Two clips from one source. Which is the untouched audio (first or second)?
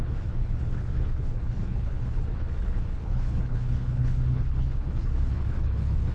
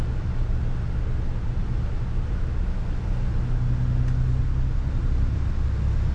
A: second